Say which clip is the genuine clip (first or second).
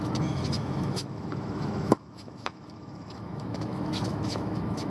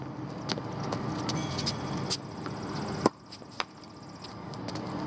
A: second